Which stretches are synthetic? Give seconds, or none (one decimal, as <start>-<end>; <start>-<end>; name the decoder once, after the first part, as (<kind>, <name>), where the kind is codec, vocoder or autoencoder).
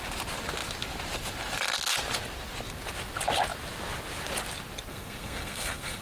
4.9-6.0 (codec, SNAC)